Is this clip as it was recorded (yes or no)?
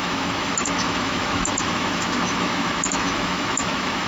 no